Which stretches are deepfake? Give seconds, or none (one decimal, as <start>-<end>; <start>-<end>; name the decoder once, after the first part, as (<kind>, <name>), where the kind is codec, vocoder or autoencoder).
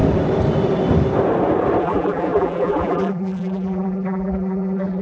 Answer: 1.8-5.0 (vocoder, BigVGAN v2)